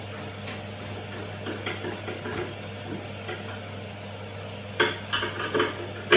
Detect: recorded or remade recorded